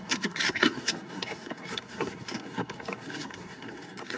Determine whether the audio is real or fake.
fake